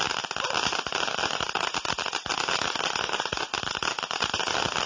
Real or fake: real